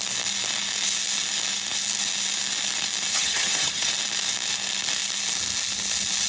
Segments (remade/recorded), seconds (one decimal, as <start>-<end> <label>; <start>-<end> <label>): 0.0-3.1 recorded; 3.1-3.9 remade; 3.9-6.3 recorded